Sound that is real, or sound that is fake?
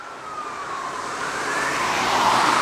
fake